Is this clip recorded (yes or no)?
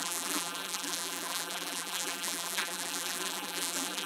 no